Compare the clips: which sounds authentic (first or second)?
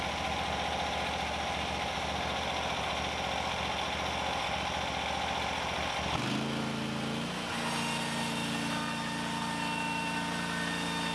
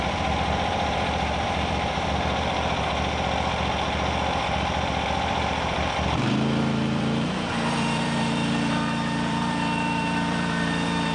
first